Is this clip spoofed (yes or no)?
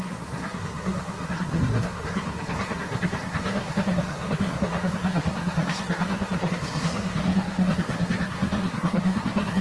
yes